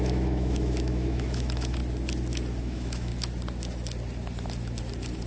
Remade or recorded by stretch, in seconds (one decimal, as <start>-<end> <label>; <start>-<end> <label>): 0.0-1.8 remade; 1.8-2.6 recorded; 2.6-3.1 remade; 3.1-5.3 recorded